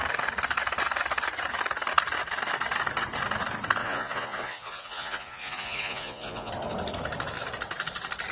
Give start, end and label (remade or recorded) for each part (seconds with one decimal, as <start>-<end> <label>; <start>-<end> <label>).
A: 0.0-3.8 recorded; 3.8-6.5 remade; 6.5-8.3 recorded